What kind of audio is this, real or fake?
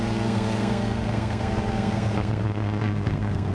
fake